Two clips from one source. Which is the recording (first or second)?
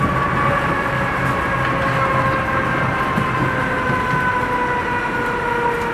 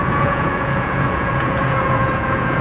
first